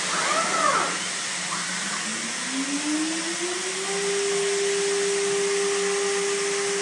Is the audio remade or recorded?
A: recorded